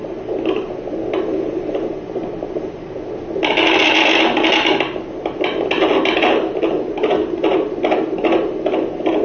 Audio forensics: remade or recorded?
recorded